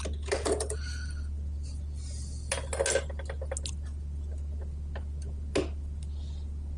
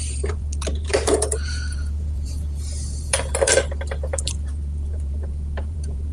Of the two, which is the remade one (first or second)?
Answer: second